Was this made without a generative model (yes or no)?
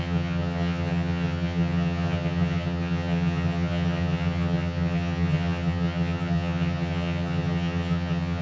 no